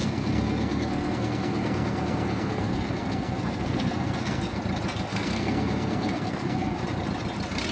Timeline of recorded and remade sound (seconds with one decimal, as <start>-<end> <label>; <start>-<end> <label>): 0.0-4.6 remade; 4.6-5.1 recorded; 5.1-6.8 remade; 6.8-7.7 recorded